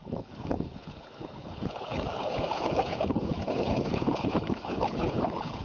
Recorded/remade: remade